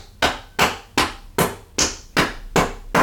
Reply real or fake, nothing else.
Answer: real